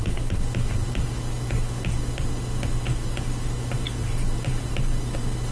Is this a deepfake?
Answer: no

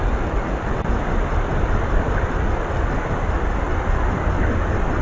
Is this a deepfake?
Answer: no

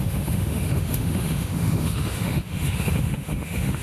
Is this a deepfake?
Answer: yes